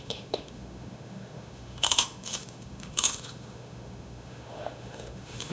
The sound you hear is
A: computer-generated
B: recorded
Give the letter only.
A